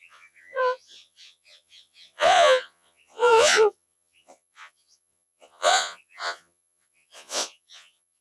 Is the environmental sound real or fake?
fake